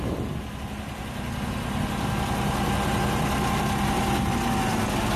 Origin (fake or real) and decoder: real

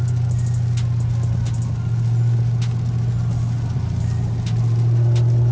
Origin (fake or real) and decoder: real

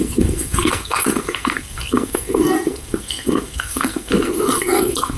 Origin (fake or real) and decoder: fake, codec, SNAC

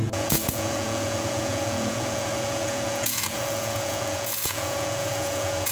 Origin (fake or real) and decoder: fake, vocoder, Vocos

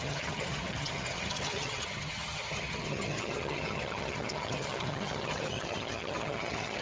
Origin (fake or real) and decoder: fake, vocoder, HiFi-GAN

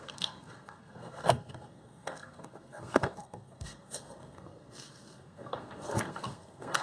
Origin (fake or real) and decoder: fake, codec, SNAC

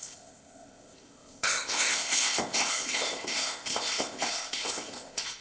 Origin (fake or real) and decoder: fake, codec, ZipCodec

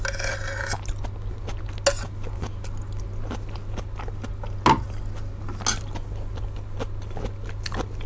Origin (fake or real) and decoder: real